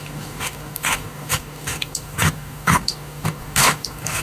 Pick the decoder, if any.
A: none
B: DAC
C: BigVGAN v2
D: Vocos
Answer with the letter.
B